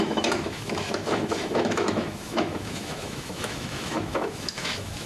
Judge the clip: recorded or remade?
remade